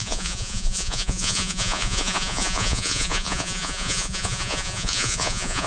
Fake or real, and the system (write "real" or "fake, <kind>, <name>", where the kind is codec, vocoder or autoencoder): fake, vocoder, Vocos